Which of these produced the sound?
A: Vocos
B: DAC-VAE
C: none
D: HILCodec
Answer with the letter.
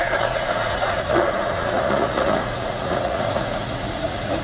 A